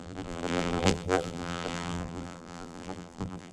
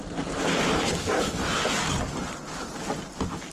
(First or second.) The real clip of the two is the second